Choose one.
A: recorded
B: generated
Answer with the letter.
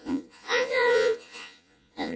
B